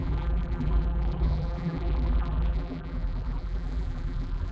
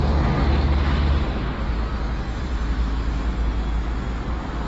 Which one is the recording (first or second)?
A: second